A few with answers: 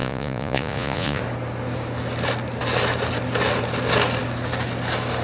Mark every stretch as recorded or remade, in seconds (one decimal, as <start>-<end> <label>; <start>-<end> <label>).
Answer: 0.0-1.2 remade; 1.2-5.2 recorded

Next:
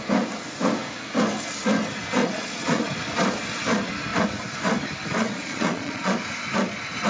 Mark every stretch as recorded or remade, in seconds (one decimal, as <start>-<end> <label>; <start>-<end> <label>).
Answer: 0.0-2.2 recorded; 2.2-2.9 remade; 2.9-5.2 recorded; 5.2-6.1 remade; 6.1-7.1 recorded

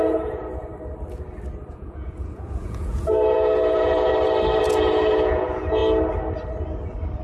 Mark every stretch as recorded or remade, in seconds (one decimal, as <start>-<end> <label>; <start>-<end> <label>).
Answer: 0.0-0.7 remade; 0.7-1.7 recorded; 1.7-4.1 remade; 4.1-4.6 recorded; 4.6-5.8 remade; 5.8-7.2 recorded

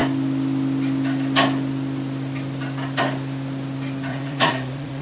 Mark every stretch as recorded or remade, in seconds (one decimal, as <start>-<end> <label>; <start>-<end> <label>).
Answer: 0.0-4.1 recorded; 4.1-5.0 remade

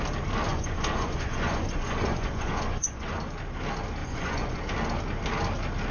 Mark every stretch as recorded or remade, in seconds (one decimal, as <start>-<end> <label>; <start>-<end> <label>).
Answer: 0.0-0.5 recorded; 0.5-3.1 remade; 3.1-4.0 recorded; 4.0-4.6 remade; 4.6-5.9 recorded

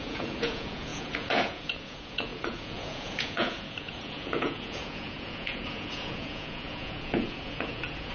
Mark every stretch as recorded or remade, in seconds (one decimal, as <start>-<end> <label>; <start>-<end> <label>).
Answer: 0.0-8.1 remade

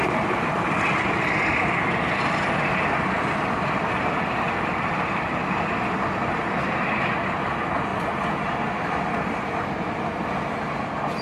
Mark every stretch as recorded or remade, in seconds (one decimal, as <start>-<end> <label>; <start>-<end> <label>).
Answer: 0.0-11.2 recorded